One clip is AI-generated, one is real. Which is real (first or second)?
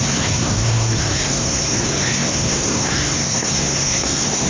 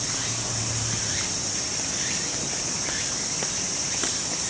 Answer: second